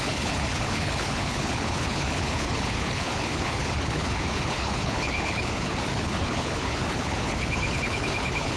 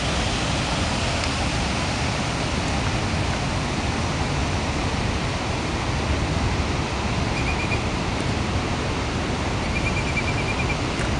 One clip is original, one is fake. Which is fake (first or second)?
first